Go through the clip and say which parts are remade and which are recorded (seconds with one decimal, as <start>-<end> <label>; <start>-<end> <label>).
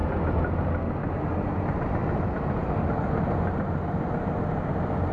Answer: 0.0-1.1 recorded; 1.1-2.0 remade; 2.0-5.1 recorded